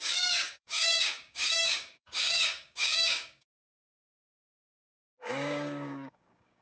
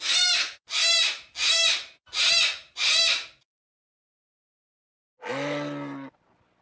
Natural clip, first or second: second